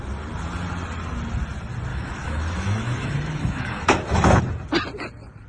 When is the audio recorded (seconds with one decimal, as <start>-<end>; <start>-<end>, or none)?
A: 0.0-1.9; 4.4-5.5